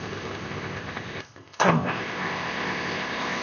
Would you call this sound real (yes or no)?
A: no